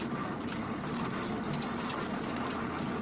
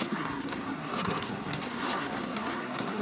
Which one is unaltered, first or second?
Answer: first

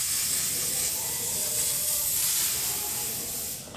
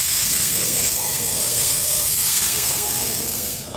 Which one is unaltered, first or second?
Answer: first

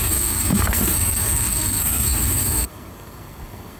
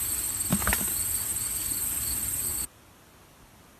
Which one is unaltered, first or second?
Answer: second